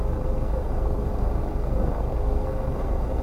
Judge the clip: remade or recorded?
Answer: remade